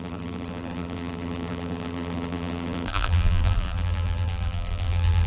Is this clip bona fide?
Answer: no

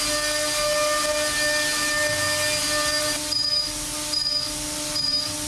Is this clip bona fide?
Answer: yes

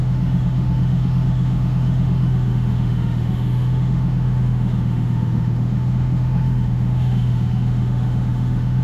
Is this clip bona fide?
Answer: no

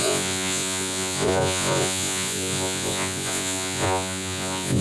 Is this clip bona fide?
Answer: no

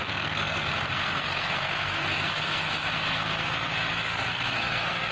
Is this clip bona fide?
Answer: no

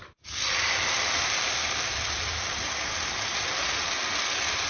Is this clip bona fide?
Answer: yes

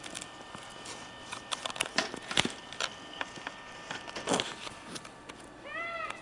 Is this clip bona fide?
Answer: yes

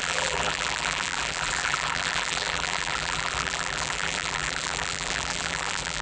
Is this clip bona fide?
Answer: no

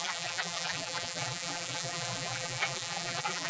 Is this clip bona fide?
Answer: no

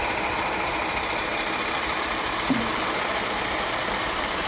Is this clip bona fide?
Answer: yes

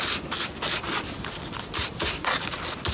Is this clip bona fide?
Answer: yes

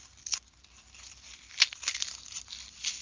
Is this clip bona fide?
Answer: yes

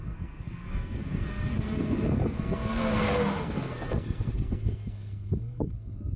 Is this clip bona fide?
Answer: no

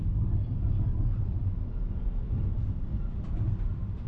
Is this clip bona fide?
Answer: yes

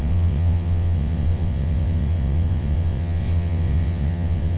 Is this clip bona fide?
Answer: no